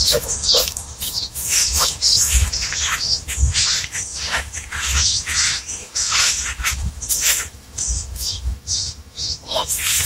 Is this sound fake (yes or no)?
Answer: yes